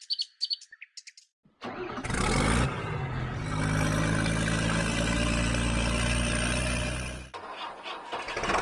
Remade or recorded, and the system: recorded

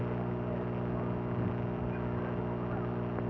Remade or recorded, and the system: recorded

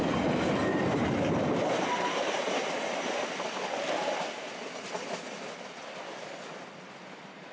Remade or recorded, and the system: recorded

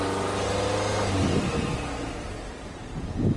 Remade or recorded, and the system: recorded